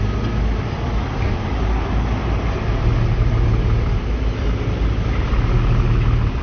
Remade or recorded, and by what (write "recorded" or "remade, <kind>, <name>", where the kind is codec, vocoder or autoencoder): recorded